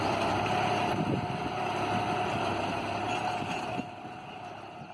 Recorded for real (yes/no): yes